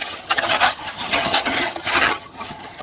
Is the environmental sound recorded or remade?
remade